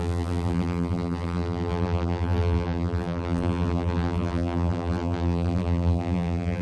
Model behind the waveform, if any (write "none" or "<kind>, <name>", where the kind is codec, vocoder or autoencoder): vocoder, BigVGAN v2